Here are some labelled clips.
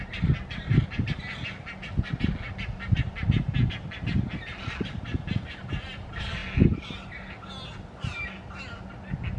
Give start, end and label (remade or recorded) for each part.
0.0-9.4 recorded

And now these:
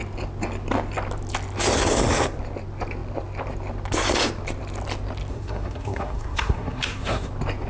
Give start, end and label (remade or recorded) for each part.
0.0-5.3 recorded; 5.3-7.3 remade; 7.3-7.7 recorded

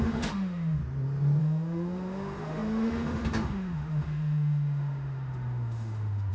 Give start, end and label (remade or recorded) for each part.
0.0-0.8 remade; 0.8-1.4 recorded; 1.4-6.3 remade